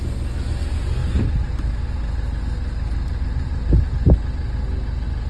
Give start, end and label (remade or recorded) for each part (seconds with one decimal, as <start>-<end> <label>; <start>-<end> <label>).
0.0-5.3 recorded